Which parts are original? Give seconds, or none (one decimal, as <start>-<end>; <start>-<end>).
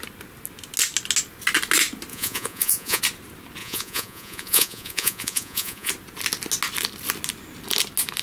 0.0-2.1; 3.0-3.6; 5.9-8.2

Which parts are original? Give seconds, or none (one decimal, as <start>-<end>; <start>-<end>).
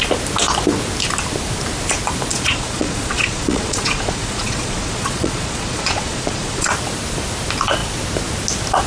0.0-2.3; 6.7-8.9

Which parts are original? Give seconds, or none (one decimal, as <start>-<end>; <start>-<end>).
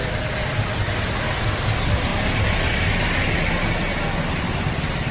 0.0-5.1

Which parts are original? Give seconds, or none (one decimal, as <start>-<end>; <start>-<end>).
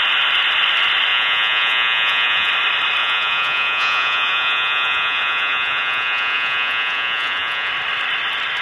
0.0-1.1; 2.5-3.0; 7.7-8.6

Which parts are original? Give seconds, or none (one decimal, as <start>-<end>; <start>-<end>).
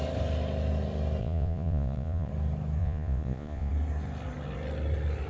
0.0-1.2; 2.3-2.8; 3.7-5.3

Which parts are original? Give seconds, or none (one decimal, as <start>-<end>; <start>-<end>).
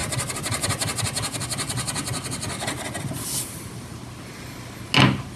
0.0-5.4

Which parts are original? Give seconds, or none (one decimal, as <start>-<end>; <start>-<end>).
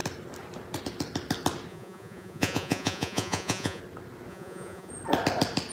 0.0-1.7; 3.8-4.3; 4.9-5.7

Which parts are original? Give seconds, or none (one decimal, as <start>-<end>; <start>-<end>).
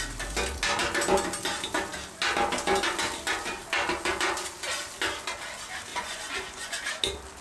0.0-5.9; 6.9-7.4